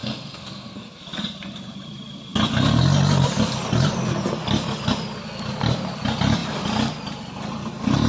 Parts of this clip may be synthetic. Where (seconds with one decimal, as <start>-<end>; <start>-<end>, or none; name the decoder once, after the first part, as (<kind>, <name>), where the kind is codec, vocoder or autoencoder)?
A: 0.0-1.0 (codec, SNAC)